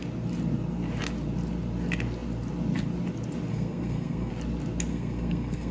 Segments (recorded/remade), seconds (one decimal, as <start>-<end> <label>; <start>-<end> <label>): 0.0-3.5 recorded; 3.5-4.3 remade; 4.3-4.9 recorded; 4.9-5.7 remade